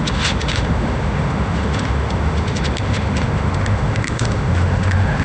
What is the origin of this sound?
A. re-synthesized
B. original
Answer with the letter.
A